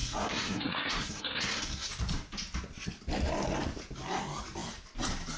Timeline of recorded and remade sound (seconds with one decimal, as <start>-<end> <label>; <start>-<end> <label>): 0.0-1.9 remade; 1.9-5.4 recorded